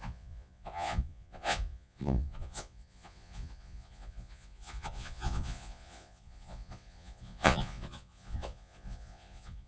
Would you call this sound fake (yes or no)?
yes